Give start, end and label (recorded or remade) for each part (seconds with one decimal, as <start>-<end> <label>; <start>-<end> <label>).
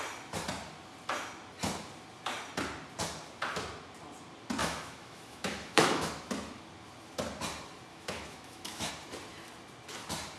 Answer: 0.0-4.6 recorded; 4.6-6.1 remade; 6.1-7.9 recorded; 7.9-8.9 remade; 8.9-10.4 recorded